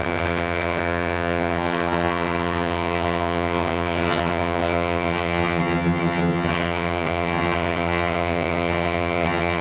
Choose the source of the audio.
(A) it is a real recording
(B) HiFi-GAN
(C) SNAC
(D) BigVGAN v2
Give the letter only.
B